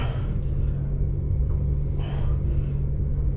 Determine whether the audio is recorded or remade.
recorded